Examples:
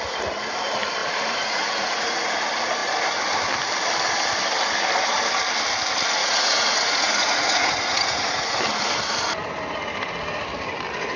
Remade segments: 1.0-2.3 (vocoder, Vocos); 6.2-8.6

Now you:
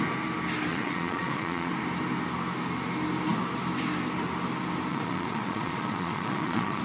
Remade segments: 0.7-1.7 (vocoder, Vocos); 4.9-6.8

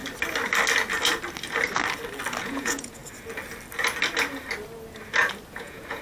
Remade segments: 2.4-3.0 (vocoder, Vocos); 5.5-6.0

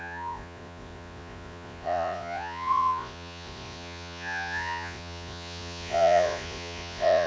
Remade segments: 0.0-7.3 (vocoder, Vocos)

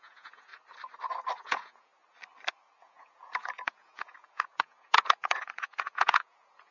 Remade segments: 0.0-0.5 (vocoder, Vocos); 1.4-1.9; 2.8-6.7